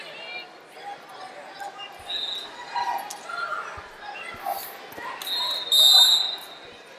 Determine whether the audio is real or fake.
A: real